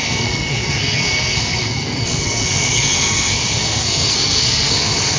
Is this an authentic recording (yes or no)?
no